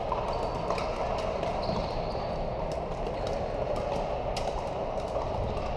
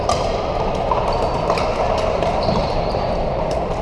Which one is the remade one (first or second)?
second